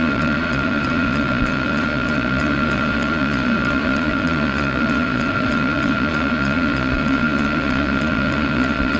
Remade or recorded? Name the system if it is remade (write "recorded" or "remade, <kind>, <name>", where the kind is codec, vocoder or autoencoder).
remade, vocoder, Vocos